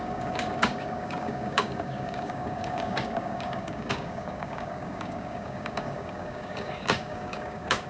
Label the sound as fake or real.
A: fake